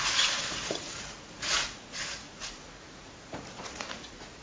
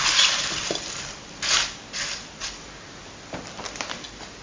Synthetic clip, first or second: first